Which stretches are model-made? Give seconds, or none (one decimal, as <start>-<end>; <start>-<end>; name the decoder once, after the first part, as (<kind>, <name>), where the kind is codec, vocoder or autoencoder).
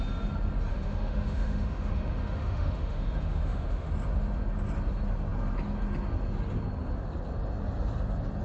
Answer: 0.7-3.9 (autoencoder, DAC-VAE)